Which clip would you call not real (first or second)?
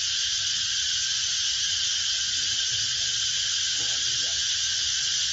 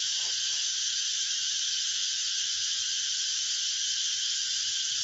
second